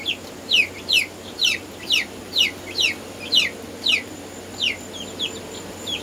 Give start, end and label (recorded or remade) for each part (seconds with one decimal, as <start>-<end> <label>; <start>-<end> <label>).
0.0-1.4 recorded; 1.4-2.2 remade; 2.2-6.0 recorded